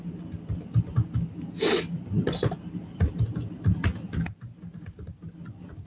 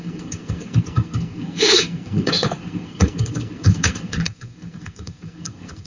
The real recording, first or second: first